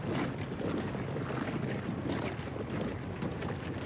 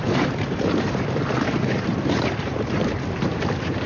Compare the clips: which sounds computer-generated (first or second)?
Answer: second